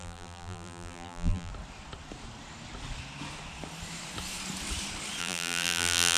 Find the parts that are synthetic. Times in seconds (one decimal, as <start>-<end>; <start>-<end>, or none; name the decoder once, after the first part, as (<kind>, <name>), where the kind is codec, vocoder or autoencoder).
0.0-1.5 (vocoder, BigVGAN v2); 5.2-6.2